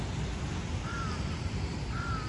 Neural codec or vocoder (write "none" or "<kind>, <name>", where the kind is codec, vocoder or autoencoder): none